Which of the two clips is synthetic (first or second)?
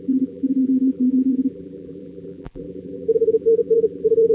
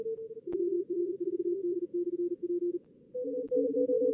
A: first